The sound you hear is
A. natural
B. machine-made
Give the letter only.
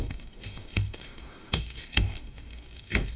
B